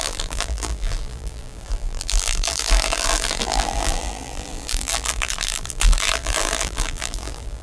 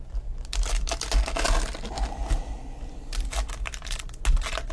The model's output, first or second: first